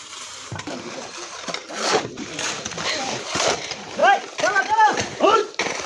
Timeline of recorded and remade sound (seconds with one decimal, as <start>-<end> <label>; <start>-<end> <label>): 0.0-4.0 remade; 4.0-4.6 recorded; 4.6-5.9 remade